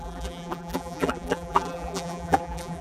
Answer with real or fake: fake